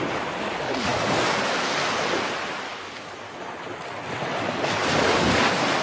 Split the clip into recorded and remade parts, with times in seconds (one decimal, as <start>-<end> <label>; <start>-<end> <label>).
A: 0.0-0.9 recorded; 0.9-2.3 remade; 2.3-2.7 recorded; 2.7-3.4 remade; 3.4-4.8 recorded; 4.8-5.8 remade